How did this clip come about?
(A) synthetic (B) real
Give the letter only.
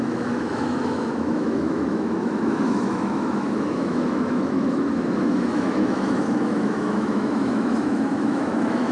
A